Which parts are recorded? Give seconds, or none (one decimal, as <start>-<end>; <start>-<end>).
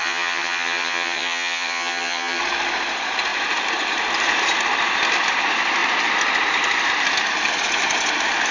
2.4-8.5